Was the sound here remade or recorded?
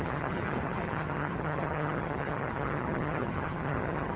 remade